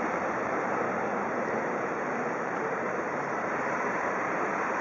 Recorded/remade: remade